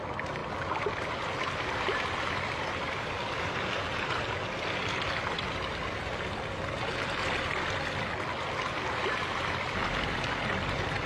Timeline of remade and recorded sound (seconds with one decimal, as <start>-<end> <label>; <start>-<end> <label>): 0.0-0.4 remade; 0.4-1.0 recorded; 1.0-3.8 remade; 3.8-8.7 recorded; 8.7-11.1 remade